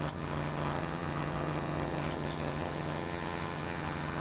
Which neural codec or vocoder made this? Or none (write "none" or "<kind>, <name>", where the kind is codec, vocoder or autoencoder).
vocoder, HiFi-GAN